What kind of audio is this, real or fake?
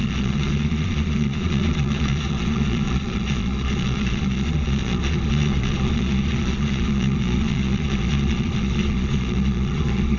fake